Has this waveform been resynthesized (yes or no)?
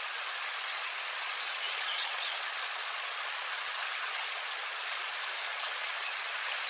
yes